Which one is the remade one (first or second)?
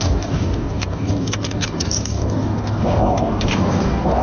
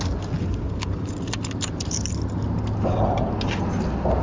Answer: first